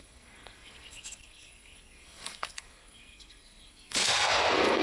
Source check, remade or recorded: remade